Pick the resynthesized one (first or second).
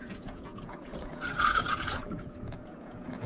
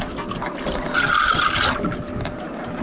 first